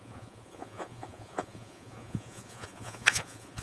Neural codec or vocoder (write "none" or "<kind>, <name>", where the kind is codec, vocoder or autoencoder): vocoder, Vocos